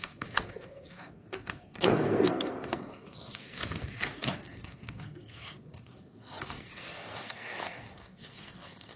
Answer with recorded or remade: remade